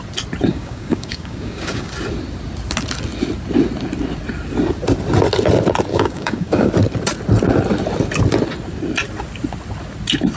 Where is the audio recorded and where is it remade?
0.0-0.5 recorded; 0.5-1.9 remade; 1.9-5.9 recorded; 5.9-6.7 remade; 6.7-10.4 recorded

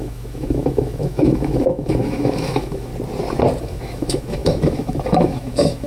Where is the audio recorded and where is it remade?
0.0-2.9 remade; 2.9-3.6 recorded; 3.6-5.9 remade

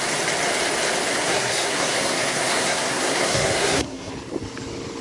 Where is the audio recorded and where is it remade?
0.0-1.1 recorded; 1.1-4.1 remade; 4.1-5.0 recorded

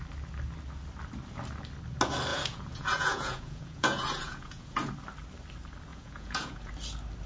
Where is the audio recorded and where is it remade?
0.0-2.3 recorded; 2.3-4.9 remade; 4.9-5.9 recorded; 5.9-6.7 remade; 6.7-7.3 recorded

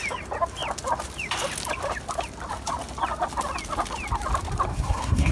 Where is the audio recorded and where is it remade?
0.0-4.7 recorded; 4.7-5.3 remade